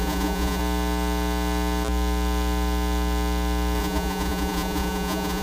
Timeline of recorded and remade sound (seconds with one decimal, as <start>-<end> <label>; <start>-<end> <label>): 0.0-0.6 remade; 0.6-3.8 recorded; 3.8-5.4 remade